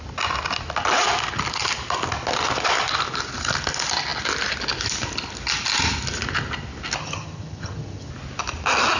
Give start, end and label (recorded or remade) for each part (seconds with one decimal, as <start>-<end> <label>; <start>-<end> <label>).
0.0-7.0 recorded; 7.0-8.1 remade; 8.1-9.0 recorded